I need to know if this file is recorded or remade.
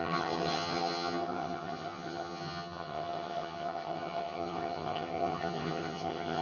remade